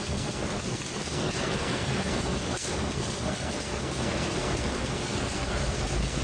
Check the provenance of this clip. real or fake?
fake